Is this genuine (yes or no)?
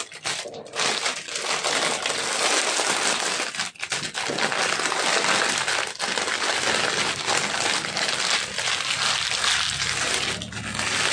yes